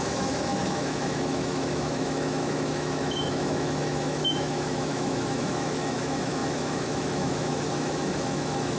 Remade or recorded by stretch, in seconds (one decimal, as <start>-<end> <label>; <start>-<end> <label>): 0.0-8.8 remade